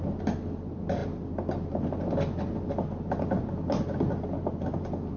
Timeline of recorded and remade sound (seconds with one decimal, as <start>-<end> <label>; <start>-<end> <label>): 0.0-5.2 recorded